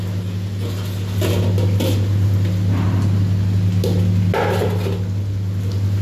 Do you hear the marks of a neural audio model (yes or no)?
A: no